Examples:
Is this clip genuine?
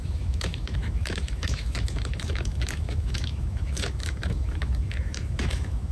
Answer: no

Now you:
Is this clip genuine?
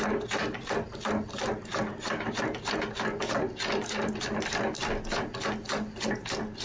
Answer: yes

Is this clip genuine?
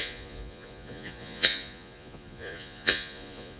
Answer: no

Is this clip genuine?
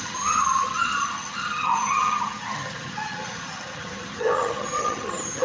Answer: no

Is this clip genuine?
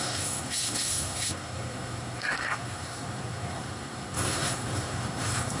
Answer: no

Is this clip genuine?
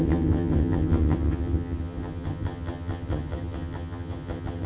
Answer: no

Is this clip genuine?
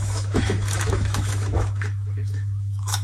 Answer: no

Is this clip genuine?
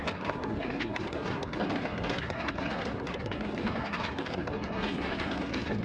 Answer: no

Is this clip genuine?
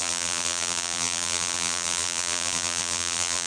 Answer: no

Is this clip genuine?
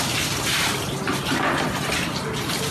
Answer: yes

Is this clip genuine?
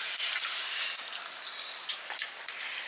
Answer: yes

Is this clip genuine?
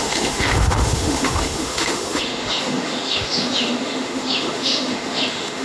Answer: no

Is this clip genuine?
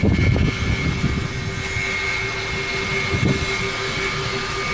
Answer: yes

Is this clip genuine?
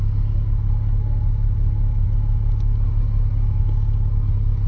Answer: yes